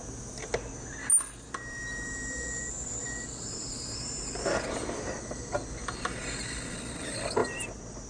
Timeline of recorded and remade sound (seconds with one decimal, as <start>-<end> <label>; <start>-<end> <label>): 0.0-8.1 recorded